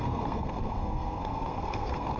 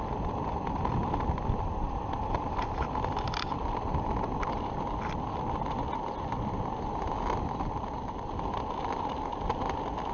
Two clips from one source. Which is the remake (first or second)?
first